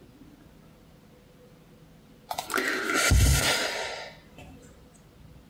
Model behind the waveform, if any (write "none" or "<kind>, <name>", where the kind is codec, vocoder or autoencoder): none